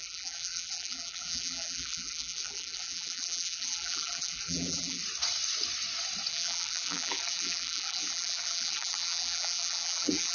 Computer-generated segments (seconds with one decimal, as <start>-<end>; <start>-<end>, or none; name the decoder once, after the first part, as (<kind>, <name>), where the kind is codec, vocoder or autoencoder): 0.0-5.0 (vocoder, BigVGAN v2); 6.3-10.3